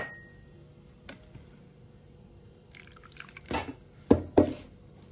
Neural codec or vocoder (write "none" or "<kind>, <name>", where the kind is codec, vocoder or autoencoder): none